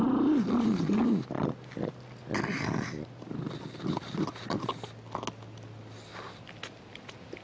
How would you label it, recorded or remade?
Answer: recorded